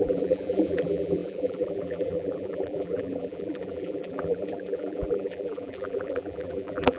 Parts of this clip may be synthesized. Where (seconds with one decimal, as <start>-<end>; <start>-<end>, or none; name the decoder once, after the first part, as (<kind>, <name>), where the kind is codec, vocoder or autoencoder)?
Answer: 0.0-7.0 (vocoder, BigVGAN v2)